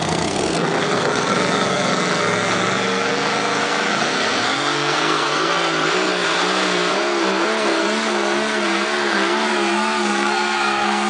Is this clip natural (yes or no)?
no